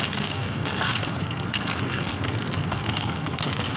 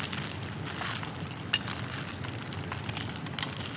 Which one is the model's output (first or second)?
first